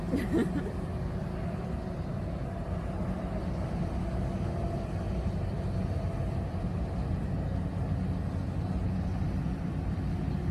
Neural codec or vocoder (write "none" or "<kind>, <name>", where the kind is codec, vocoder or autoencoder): none